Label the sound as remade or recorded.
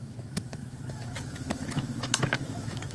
remade